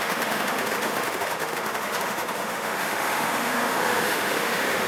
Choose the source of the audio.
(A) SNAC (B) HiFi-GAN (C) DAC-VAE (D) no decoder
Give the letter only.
C